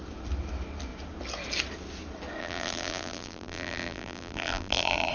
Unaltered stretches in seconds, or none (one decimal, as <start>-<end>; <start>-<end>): 0.0-2.4